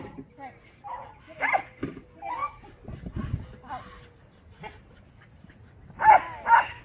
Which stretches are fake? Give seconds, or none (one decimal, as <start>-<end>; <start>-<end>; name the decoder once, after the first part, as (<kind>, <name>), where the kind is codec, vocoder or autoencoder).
none